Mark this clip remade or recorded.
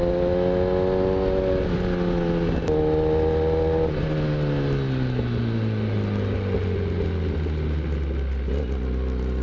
recorded